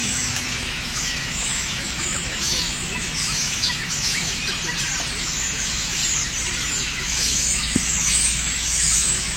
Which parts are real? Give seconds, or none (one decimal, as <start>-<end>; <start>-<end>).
4.4-5.2; 6.0-6.7